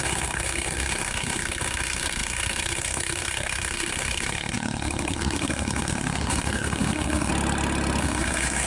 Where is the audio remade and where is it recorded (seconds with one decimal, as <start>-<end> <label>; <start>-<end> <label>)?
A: 0.0-7.3 remade; 7.3-8.0 recorded; 8.0-8.7 remade